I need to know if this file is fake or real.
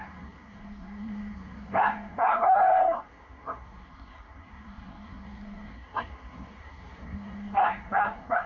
fake